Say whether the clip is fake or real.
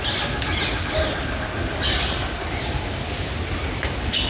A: real